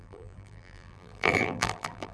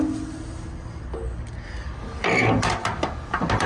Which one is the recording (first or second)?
second